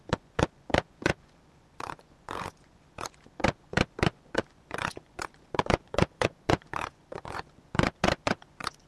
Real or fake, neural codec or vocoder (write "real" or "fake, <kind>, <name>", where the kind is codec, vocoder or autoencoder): fake, vocoder, Vocos